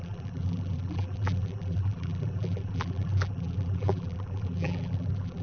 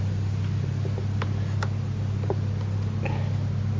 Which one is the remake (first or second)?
first